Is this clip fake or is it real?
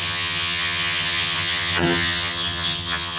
fake